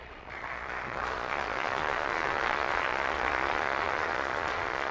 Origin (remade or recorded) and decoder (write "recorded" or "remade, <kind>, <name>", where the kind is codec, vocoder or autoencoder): remade, vocoder, Vocos